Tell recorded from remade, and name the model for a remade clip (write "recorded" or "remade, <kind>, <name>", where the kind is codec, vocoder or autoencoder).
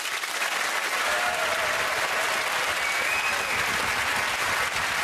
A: recorded